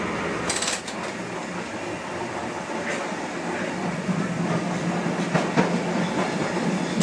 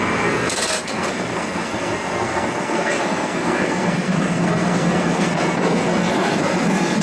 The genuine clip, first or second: first